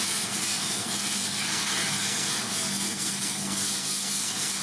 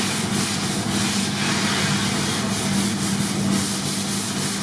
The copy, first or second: first